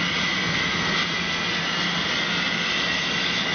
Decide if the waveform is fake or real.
real